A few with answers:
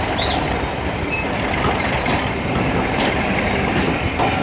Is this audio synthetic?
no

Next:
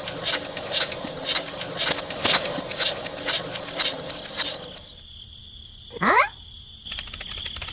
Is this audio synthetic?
no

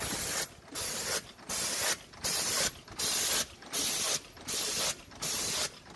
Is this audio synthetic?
no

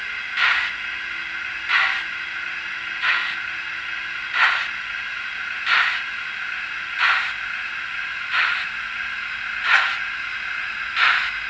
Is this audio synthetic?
no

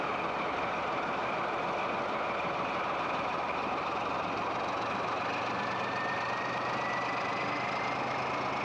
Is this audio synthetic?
no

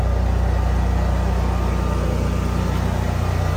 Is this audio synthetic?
no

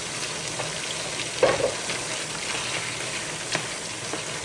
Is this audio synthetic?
no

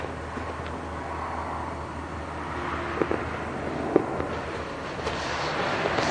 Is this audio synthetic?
no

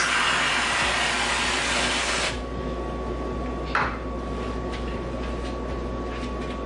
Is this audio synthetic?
no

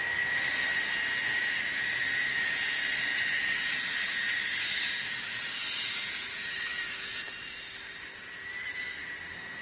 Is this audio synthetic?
no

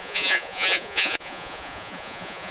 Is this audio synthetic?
yes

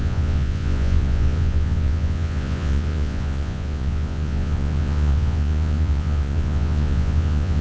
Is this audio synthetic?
yes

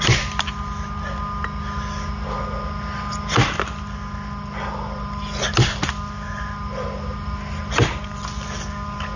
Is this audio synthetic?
no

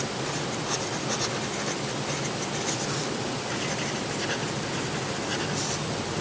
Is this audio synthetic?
no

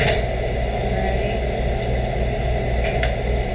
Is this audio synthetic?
no